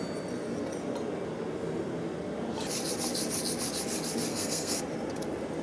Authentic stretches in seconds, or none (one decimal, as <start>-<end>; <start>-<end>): 0.0-4.3; 4.8-5.6